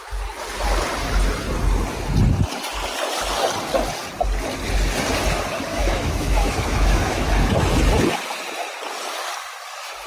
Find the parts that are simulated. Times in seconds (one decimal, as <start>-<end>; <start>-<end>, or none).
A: 5.7-7.3